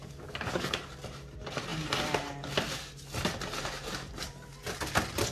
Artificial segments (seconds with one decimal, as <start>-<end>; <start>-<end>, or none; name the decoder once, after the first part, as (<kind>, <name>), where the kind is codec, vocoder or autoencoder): 0.0-0.8 (codec, DAC)